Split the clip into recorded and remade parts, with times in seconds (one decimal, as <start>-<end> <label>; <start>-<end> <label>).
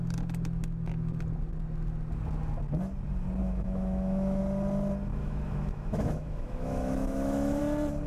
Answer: 0.0-3.4 recorded; 3.4-4.4 remade; 4.4-5.1 recorded; 5.1-7.6 remade; 7.6-8.1 recorded